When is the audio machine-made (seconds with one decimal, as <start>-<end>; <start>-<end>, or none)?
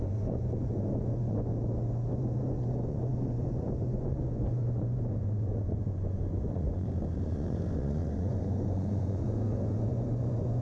0.0-1.5; 2.1-10.6